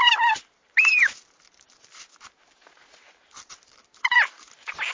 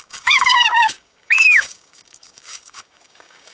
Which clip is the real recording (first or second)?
first